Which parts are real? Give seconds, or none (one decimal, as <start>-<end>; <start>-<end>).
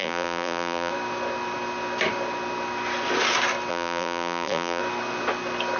0.9-3.7; 4.8-5.8